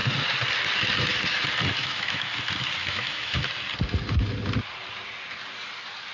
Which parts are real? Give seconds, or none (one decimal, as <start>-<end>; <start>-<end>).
0.0-1.8; 2.4-2.8; 3.5-6.1